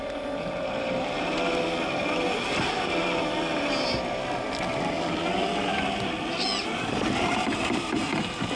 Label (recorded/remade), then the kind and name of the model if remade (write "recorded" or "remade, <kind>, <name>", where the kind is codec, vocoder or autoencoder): recorded